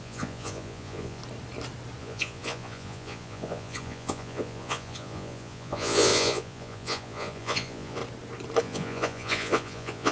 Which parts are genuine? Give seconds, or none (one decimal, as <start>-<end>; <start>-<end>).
1.2-2.0; 8.0-8.6